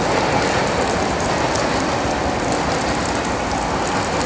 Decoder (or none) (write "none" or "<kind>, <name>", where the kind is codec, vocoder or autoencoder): none